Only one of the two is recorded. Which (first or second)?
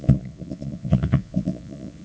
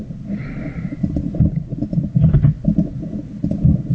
second